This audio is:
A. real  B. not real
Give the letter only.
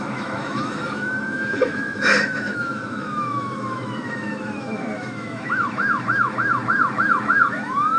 B